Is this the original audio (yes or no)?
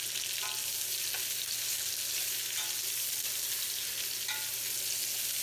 yes